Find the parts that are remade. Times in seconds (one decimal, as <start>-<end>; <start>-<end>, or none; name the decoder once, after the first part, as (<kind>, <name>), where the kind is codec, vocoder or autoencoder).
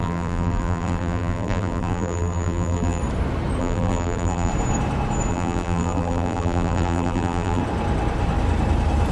0.0-3.0 (vocoder, BigVGAN v2); 3.6-4.5; 5.3-7.6